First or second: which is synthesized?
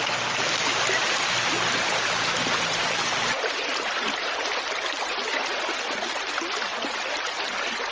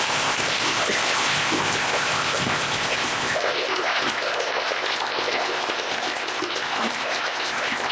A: second